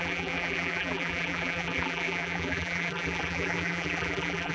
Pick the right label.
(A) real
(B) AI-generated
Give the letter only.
B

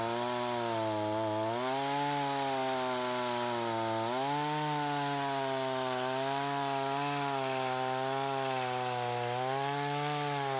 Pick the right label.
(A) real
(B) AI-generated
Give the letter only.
A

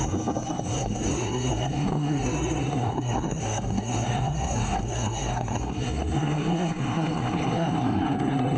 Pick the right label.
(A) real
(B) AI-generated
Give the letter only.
B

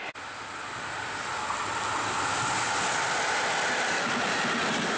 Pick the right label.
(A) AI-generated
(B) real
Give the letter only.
B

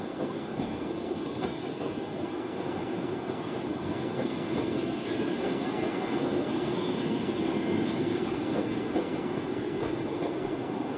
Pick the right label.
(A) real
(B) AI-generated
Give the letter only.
B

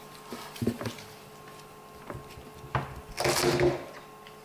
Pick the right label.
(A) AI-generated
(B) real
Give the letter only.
B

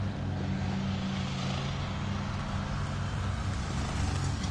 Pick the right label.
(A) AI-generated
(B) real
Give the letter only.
B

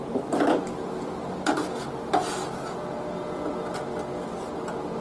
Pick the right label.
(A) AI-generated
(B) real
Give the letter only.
B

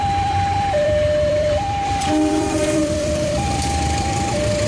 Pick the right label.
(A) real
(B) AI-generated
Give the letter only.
B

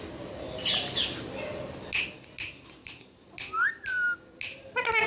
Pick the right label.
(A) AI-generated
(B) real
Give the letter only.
B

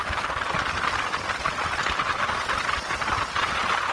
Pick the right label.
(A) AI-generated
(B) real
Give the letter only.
B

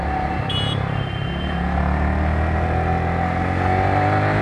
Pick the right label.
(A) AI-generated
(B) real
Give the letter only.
B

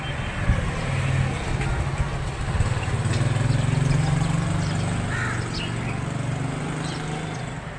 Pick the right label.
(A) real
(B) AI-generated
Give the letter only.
A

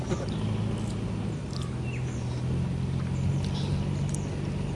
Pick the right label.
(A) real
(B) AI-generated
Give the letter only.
A